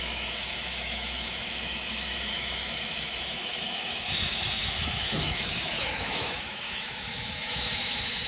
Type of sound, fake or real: fake